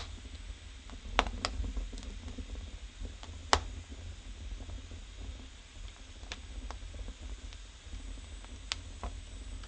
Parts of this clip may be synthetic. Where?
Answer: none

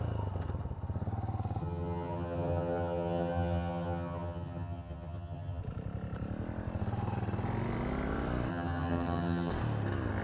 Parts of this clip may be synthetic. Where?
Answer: 1.6-5.6; 8.5-9.5

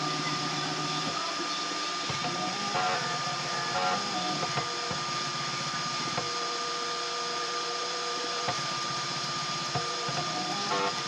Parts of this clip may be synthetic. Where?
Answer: 0.0-2.6; 7.4-10.1

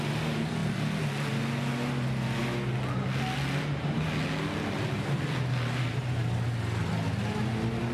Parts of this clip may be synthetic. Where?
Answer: none

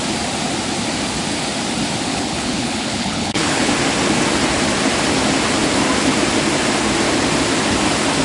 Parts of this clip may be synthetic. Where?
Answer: 2.1-3.7

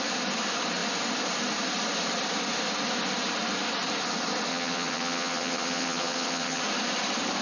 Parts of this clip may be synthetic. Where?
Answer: 4.5-6.6